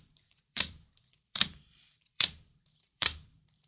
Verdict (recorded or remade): remade